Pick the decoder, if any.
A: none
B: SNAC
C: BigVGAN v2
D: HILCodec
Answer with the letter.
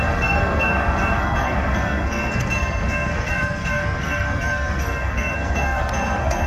B